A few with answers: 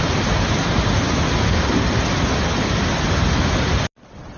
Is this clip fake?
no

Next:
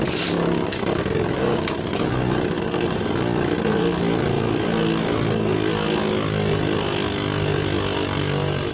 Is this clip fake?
no